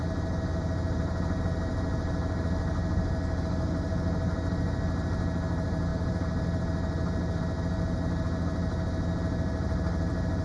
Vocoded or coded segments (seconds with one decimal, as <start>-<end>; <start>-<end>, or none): none